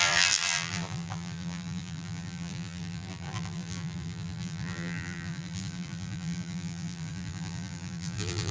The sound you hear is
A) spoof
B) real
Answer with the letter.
A